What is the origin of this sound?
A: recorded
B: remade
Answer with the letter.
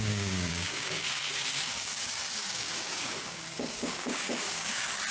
B